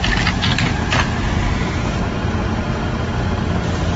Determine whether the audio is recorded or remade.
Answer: recorded